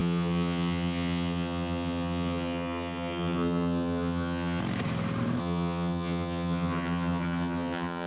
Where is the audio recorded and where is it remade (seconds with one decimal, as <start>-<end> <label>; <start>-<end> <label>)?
0.0-4.6 remade; 4.6-5.4 recorded; 5.4-8.1 remade